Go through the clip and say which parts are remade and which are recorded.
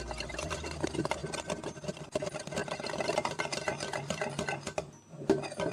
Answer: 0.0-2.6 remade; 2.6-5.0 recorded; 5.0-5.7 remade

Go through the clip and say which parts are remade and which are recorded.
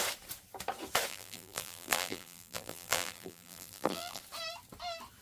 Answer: 0.0-1.1 recorded; 1.1-4.2 remade; 4.2-5.2 recorded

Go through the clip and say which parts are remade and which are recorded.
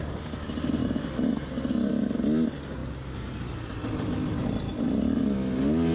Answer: 0.0-5.9 recorded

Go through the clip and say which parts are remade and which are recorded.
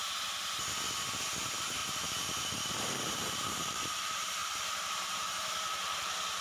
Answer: 0.0-1.4 recorded; 1.4-1.8 remade; 1.8-2.7 recorded; 2.7-6.4 remade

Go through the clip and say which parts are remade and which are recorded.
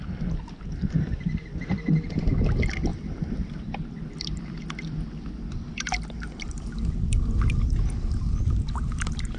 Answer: 0.0-2.9 recorded; 2.9-7.2 remade; 7.2-9.4 recorded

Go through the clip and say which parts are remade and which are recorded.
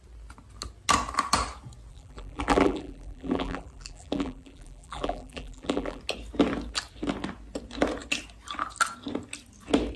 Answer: 0.0-1.9 recorded; 1.9-6.0 remade; 6.0-10.0 recorded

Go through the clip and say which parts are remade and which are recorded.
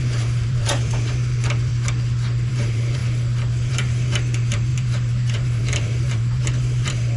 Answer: 0.0-1.7 remade; 1.7-2.5 recorded; 2.5-3.0 remade; 3.0-3.7 recorded; 3.7-7.2 remade